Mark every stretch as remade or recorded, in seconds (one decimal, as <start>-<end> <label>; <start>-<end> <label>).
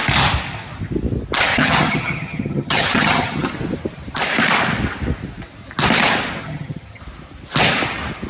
0.0-1.5 recorded; 1.5-3.5 remade; 3.5-6.4 recorded; 6.4-7.0 remade; 7.0-8.3 recorded